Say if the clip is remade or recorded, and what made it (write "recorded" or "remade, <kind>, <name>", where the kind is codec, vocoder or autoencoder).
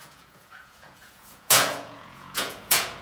remade, vocoder, Vocos